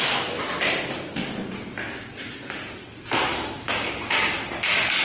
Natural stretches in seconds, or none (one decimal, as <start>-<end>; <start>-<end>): 0.0-3.3; 3.9-5.0